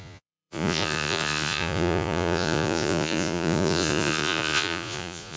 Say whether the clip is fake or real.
fake